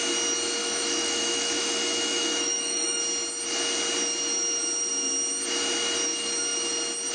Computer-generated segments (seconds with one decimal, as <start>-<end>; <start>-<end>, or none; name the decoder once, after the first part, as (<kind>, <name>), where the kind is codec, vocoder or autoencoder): 0.6-3.0 (autoencoder, DAC-VAE)